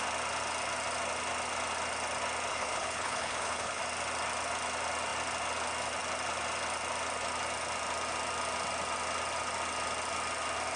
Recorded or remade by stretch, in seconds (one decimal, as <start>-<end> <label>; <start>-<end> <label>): 0.0-2.5 recorded; 2.5-3.8 remade; 3.8-10.8 recorded